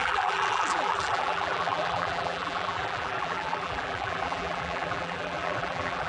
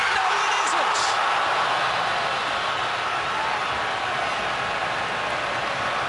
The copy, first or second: first